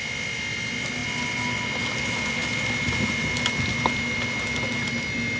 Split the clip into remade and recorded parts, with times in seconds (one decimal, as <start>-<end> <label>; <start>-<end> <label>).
0.0-5.4 recorded